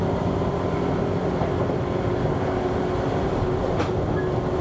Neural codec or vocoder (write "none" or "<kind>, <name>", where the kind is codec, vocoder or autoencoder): none